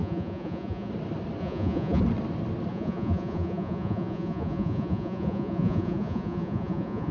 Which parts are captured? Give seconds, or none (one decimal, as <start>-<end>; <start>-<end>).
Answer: 0.9-1.4; 2.0-2.7

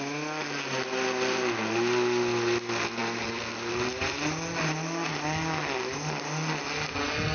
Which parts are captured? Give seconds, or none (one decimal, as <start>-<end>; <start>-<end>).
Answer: 0.0-7.3